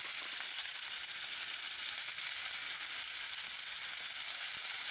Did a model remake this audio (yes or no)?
no